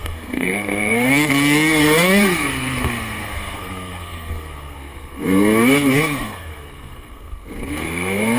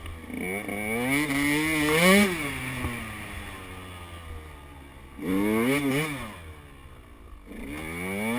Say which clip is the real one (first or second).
second